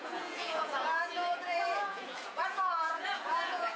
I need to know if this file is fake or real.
fake